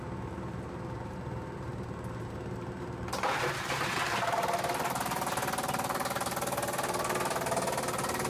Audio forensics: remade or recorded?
recorded